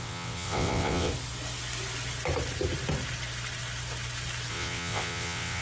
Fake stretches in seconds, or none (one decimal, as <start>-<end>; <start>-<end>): 0.0-1.1; 4.5-5.6